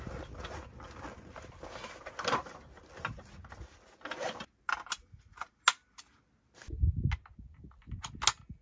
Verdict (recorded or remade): recorded